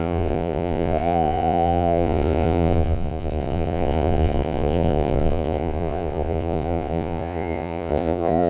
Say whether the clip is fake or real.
fake